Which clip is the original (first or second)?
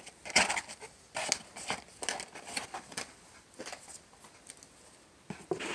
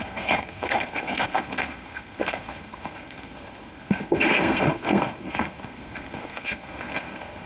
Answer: first